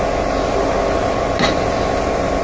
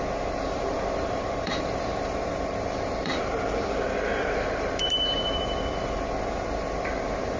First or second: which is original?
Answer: first